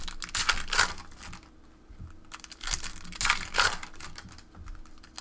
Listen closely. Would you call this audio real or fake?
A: real